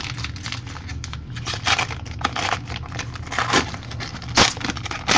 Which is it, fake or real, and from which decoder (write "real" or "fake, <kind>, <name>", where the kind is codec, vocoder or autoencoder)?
real